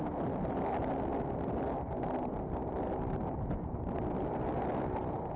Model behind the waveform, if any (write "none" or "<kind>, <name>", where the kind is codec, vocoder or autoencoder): none